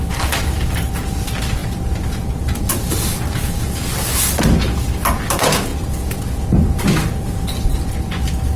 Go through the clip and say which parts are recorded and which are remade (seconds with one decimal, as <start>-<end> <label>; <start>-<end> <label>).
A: 0.0-8.6 recorded